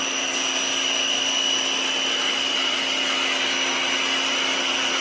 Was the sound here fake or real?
real